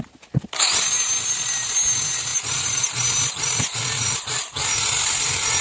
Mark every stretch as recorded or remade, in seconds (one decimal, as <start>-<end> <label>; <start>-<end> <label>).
0.0-5.6 recorded